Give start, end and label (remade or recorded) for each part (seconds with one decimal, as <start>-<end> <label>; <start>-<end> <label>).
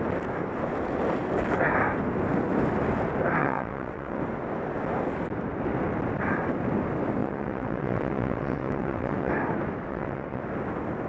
0.0-3.4 recorded; 3.4-4.2 remade; 4.2-7.2 recorded; 7.2-9.3 remade; 9.3-9.9 recorded; 9.9-10.4 remade; 10.4-11.1 recorded